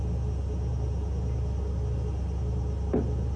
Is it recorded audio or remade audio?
recorded